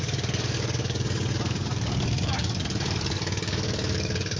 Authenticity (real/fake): fake